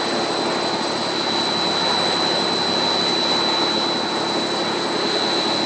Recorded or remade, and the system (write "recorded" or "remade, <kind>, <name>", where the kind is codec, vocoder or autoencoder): recorded